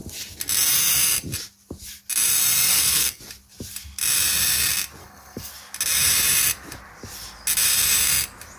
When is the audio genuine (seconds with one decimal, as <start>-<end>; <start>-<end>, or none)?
0.0-2.7; 3.2-5.0; 5.5-8.6